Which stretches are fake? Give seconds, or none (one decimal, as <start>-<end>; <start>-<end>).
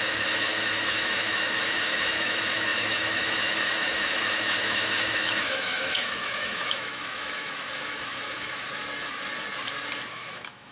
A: 0.0-8.7; 10.1-10.7